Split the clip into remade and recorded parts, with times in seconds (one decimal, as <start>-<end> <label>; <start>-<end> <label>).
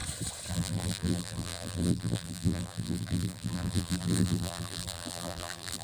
0.0-0.5 recorded; 0.5-5.8 remade